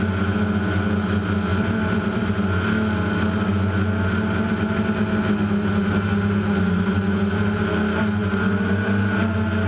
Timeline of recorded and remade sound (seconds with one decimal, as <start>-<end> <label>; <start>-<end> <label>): 0.0-1.5 recorded; 1.5-2.2 remade; 2.2-9.7 recorded

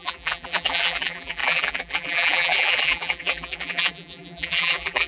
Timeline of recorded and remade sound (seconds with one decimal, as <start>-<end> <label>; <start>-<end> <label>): 0.0-5.1 remade

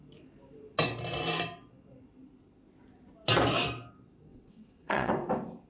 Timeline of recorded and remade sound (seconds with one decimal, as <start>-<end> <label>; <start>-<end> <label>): 0.0-4.3 recorded; 4.3-5.1 remade; 5.1-5.7 recorded

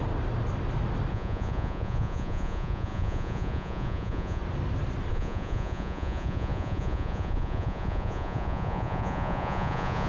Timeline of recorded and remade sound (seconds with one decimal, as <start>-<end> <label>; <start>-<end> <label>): 0.0-1.1 recorded; 1.1-4.4 remade; 4.4-5.1 recorded; 5.1-10.1 remade

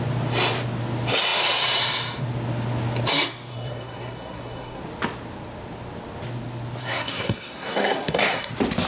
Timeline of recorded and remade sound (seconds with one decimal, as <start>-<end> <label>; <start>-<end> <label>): 0.0-3.5 recorded; 3.5-4.8 remade; 4.8-6.8 recorded; 6.8-8.5 remade; 8.5-8.9 recorded

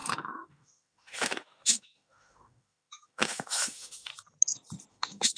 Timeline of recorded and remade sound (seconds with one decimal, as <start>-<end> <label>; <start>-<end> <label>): 0.0-4.1 remade; 4.1-4.9 recorded; 4.9-5.4 remade

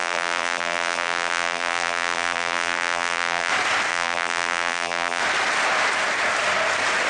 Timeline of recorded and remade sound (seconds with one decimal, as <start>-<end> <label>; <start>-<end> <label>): 0.0-3.5 remade; 3.5-3.9 recorded; 3.9-5.2 remade; 5.2-7.1 recorded